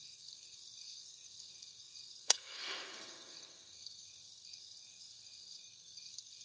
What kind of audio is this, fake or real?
fake